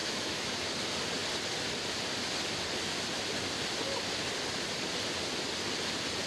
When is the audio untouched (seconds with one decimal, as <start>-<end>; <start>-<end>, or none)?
0.6-6.3